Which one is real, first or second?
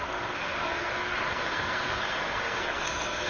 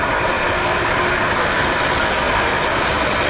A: second